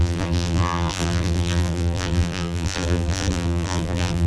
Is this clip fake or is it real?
fake